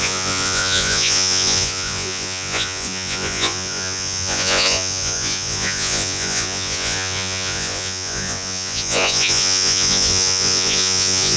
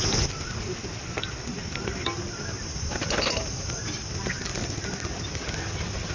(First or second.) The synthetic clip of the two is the first